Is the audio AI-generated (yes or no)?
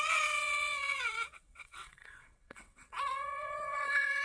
yes